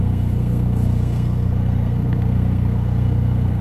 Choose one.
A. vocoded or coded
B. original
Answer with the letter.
A